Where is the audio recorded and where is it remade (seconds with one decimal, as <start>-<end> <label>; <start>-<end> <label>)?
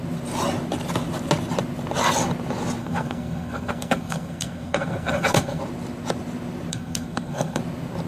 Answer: 0.0-2.8 recorded; 2.8-5.6 remade; 5.6-6.7 recorded; 6.7-7.6 remade; 7.6-8.1 recorded